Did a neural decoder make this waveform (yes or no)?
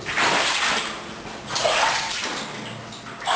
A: no